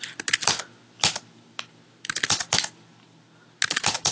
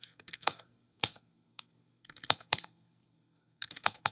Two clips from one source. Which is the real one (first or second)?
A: first